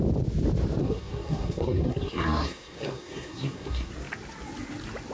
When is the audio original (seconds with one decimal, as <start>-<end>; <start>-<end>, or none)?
0.0-0.8; 3.9-5.1